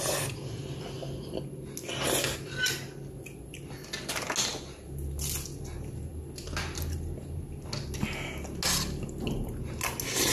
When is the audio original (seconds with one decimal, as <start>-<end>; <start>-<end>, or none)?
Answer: 0.0-10.3